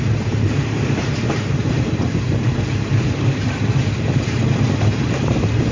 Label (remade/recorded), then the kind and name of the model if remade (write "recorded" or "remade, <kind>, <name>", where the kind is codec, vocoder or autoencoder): remade, vocoder, BigVGAN v2